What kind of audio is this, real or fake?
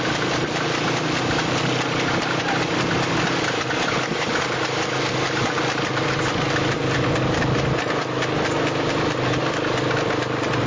real